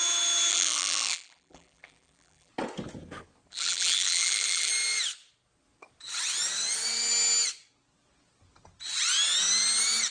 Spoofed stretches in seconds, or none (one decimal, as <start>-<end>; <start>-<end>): 0.5-2.5; 3.5-4.7